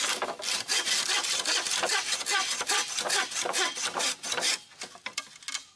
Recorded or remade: recorded